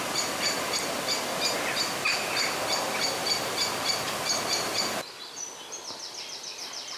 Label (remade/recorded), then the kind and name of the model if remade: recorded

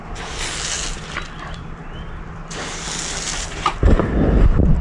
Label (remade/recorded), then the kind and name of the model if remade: recorded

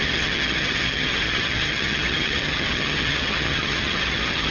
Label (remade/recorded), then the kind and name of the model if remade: remade, vocoder, HiFi-GAN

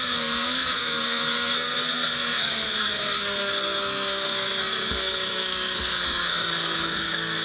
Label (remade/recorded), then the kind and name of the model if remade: remade, codec, SNAC